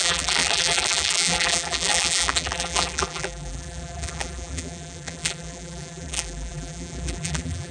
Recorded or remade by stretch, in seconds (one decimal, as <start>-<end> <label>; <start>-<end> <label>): 0.0-7.7 remade